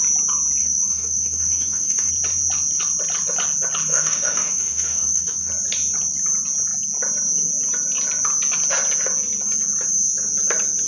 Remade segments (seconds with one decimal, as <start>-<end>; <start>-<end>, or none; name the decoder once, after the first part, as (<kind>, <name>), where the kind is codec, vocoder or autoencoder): 0.6-2.1 (autoencoder, DAC-VAE); 3.9-5.5